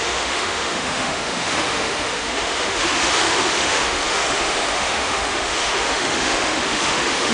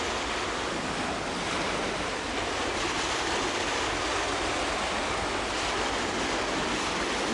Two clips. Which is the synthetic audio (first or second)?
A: first